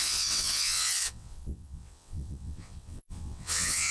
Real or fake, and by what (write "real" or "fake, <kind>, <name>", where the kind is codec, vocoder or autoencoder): fake, vocoder, WaveNeXt